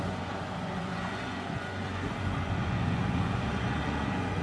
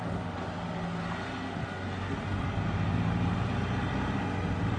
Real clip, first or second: second